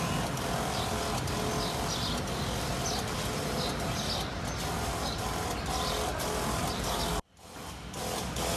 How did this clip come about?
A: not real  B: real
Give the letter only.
B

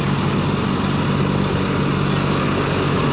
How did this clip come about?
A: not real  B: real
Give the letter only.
B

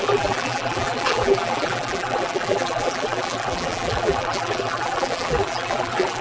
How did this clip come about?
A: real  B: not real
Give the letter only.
B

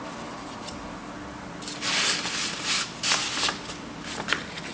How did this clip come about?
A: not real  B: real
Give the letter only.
B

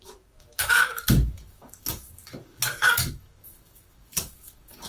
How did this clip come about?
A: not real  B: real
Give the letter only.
A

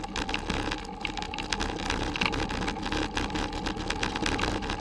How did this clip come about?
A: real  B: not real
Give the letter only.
A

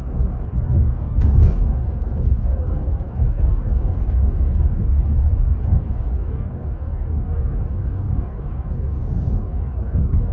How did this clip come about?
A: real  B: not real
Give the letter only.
B